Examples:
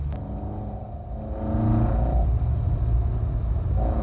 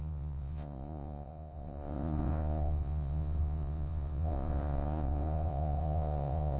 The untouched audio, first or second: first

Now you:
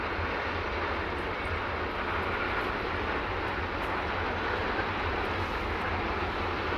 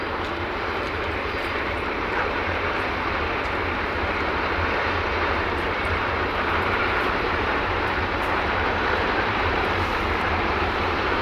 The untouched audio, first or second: first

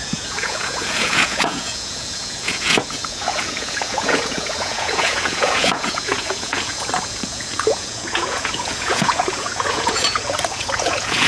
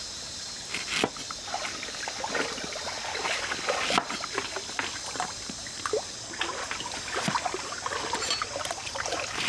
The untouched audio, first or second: second